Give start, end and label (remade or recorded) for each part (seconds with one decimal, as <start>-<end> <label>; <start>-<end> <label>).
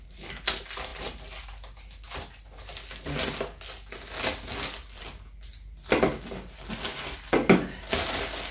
0.0-8.5 recorded